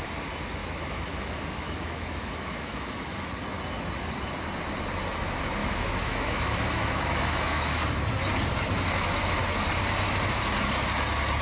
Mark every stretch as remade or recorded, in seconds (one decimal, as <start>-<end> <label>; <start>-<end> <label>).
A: 0.0-0.6 recorded; 0.6-3.3 remade; 3.3-5.6 recorded; 5.6-7.8 remade; 7.8-11.4 recorded